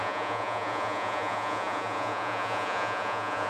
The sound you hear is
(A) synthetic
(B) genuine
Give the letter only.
A